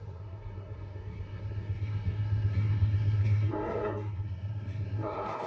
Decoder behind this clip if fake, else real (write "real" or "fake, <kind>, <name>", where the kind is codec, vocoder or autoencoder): fake, codec, SNAC